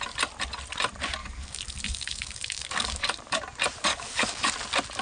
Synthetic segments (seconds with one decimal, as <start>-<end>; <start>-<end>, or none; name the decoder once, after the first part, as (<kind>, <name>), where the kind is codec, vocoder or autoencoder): 1.2-3.4 (codec, DAC); 3.9-4.5